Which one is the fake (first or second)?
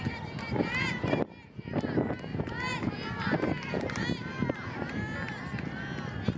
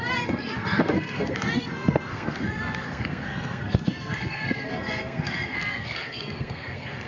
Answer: second